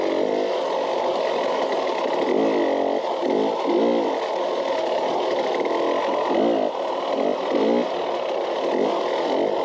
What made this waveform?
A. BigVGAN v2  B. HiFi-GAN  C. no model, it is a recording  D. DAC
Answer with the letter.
C